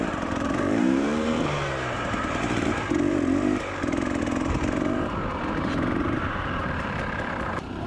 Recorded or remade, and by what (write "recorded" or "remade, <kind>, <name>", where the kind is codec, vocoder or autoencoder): remade, vocoder, BigVGAN v2